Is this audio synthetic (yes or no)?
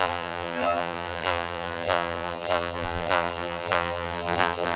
yes